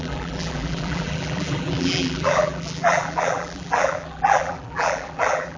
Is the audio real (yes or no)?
no